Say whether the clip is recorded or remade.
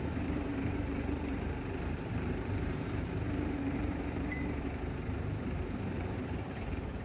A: remade